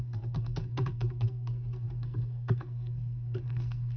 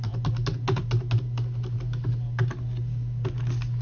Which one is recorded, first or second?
second